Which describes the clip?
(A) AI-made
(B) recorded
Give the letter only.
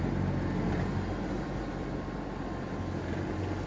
B